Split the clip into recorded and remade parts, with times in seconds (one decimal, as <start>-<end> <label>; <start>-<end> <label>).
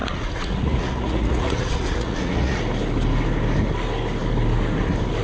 0.0-2.6 remade; 2.6-5.2 recorded